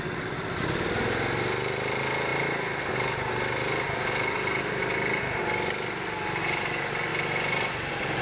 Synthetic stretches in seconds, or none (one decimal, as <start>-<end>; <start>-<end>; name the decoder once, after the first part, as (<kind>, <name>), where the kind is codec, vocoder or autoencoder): none